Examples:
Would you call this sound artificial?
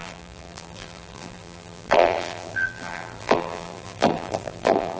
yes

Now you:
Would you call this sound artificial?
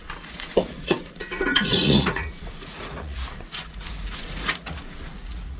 yes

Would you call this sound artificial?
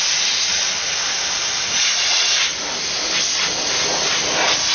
no